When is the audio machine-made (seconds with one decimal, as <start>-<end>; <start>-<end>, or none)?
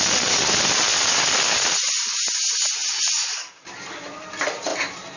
0.0-0.9; 1.5-2.8; 3.6-4.7